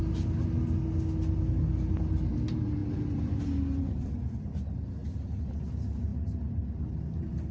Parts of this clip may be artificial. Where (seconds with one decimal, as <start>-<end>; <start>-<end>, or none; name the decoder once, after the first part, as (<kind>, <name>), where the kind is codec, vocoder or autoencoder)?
none